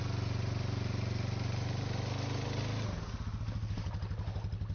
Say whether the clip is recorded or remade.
recorded